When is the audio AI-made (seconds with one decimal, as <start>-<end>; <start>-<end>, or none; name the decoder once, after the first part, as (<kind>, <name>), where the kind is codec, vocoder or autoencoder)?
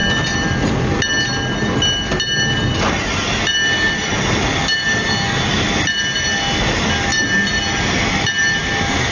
none